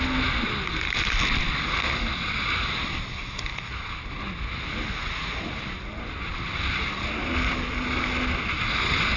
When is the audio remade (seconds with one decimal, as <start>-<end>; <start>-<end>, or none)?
3.5-4.2